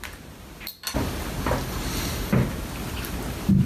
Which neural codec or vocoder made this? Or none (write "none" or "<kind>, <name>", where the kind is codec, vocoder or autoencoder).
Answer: none